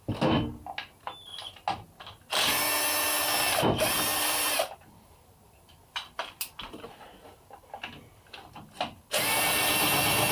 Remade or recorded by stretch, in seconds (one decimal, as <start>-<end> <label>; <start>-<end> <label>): 0.0-4.1 recorded; 4.1-5.6 remade; 5.6-10.3 recorded